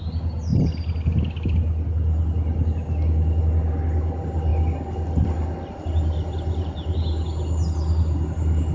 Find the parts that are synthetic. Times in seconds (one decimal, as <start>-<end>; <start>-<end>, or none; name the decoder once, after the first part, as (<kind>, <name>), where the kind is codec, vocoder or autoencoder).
none